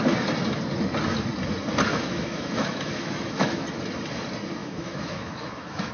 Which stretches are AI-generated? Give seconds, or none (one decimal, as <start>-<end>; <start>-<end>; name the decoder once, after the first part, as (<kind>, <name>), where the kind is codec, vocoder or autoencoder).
1.9-3.8 (autoencoder, DAC-VAE); 4.6-5.9